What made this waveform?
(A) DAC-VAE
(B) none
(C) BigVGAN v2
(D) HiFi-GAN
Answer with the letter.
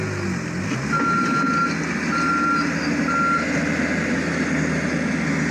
B